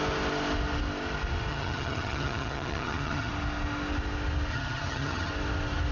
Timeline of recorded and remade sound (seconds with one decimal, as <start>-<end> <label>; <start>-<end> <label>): 0.0-1.5 recorded; 1.5-3.3 remade; 3.3-4.5 recorded; 4.5-5.3 remade; 5.3-5.9 recorded

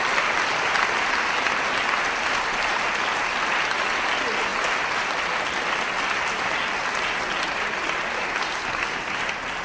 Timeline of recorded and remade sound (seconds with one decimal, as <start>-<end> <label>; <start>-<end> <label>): 0.0-9.6 recorded

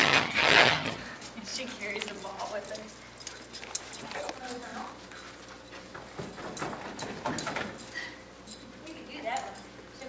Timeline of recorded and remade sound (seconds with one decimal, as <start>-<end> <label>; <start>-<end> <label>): 0.0-1.0 remade; 1.0-10.1 recorded

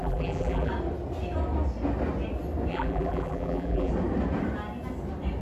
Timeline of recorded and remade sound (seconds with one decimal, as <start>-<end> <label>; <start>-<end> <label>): 0.0-0.7 remade; 0.7-2.7 recorded; 2.7-3.9 remade; 3.9-5.4 recorded

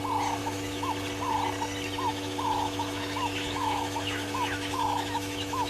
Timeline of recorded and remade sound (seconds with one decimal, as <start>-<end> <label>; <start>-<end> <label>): 0.0-0.4 recorded; 0.4-0.9 remade; 0.9-2.1 recorded; 2.1-5.7 remade

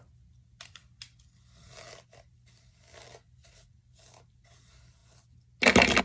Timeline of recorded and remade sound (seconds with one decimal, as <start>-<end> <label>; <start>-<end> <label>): 0.0-6.0 recorded

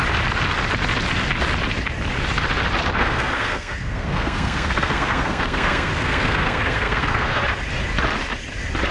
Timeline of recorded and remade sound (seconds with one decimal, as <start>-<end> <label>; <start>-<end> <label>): 0.0-3.0 recorded; 3.0-7.4 remade; 7.4-8.9 recorded